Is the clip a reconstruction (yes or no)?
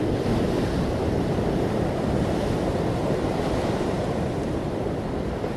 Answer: yes